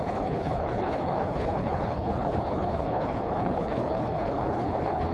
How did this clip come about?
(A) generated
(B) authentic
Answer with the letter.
A